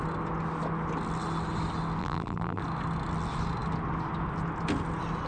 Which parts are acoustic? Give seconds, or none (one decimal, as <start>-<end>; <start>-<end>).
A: 0.0-2.0; 2.6-5.3